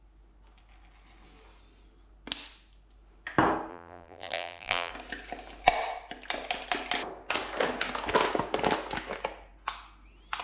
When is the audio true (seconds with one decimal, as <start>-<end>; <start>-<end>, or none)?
0.0-3.7; 4.9-10.4